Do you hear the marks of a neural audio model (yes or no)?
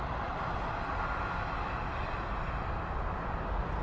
no